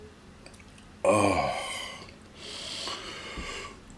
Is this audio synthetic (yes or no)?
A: no